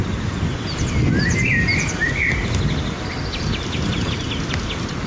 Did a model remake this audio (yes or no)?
no